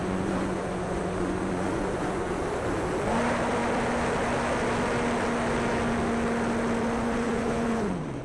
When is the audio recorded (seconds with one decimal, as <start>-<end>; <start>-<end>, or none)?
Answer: 2.3-7.0